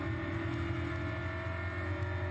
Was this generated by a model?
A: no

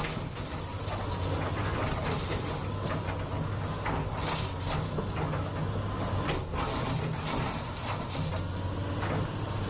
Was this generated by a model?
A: no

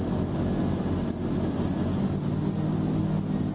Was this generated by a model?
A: no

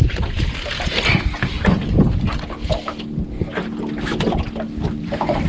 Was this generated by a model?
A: no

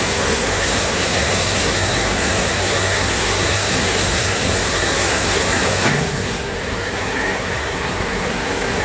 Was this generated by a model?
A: yes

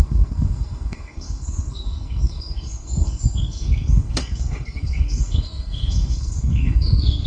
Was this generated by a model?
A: yes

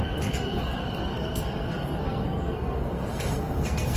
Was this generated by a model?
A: yes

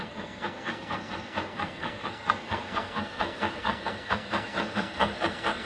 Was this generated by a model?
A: yes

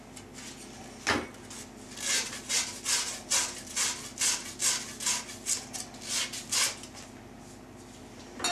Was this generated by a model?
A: no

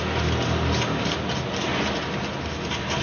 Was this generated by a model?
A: no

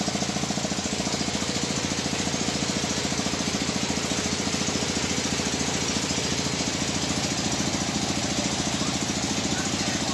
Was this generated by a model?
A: no